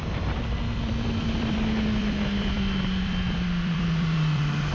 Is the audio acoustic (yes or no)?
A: no